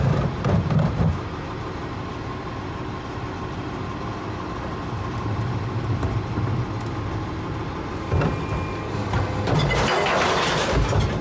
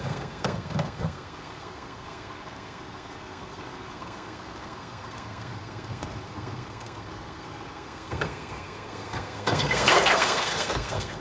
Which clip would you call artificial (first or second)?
second